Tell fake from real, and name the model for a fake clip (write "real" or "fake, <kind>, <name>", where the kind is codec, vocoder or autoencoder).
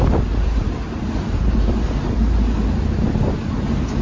real